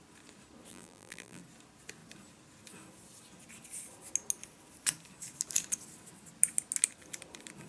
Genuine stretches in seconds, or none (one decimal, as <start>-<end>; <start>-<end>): 0.0-0.7; 1.4-7.7